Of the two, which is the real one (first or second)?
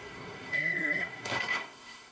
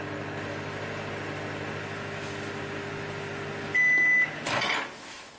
second